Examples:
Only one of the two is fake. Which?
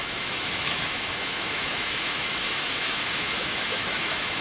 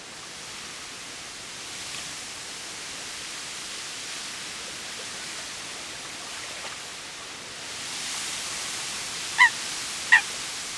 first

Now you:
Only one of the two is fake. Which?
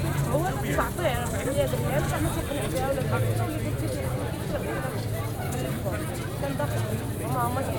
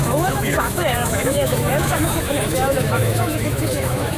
second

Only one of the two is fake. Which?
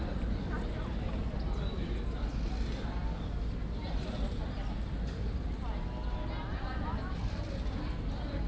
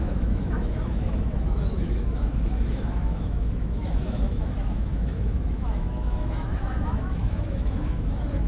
second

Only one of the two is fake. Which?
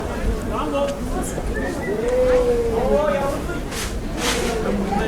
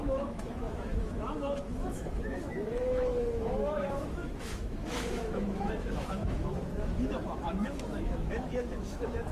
second